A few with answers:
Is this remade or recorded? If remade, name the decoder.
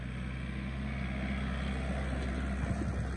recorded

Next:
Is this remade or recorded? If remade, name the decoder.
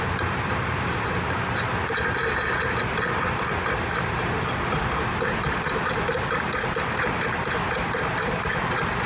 remade, vocoder, BigVGAN v2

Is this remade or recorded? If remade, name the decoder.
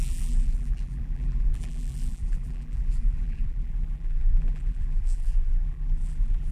remade, vocoder, BigVGAN v2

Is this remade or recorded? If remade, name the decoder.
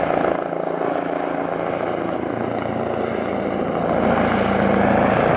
recorded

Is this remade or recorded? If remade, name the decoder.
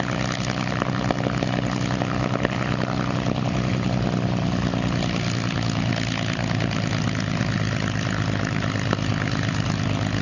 recorded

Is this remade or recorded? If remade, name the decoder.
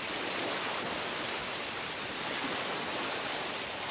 remade, vocoder, BigVGAN v2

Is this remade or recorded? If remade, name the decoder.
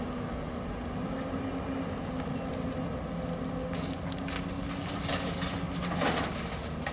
recorded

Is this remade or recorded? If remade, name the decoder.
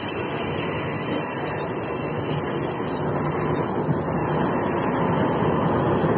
recorded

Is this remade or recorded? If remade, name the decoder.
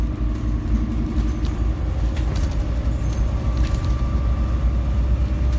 recorded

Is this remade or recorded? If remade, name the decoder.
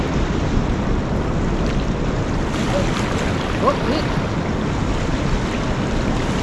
recorded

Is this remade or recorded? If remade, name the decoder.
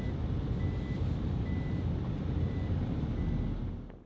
recorded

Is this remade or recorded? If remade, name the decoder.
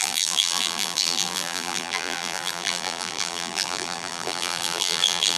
remade, vocoder, BigVGAN v2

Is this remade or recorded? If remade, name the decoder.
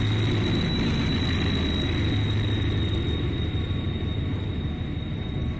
recorded